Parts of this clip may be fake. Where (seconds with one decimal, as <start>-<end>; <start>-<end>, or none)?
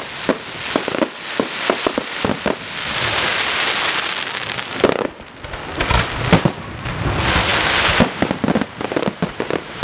none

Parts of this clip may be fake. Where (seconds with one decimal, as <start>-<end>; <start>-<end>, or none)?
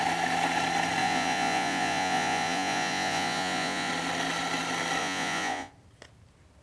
1.0-3.9; 5.0-5.7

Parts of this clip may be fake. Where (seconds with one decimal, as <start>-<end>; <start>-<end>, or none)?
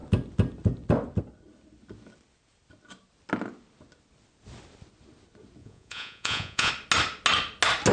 5.6-6.7